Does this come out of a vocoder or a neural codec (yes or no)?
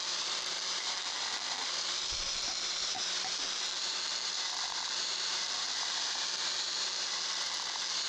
yes